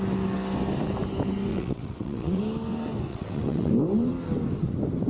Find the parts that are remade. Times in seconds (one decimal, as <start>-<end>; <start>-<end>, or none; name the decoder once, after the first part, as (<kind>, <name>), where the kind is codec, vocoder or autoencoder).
1.5-2.4 (vocoder, WaveNeXt); 3.1-3.7